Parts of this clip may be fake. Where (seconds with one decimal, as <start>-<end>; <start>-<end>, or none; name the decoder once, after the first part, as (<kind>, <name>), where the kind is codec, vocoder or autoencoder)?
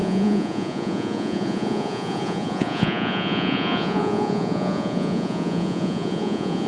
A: 0.0-6.7 (vocoder, Vocos)